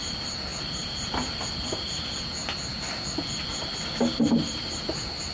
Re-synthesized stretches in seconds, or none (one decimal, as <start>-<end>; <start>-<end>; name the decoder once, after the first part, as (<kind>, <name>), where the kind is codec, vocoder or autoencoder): none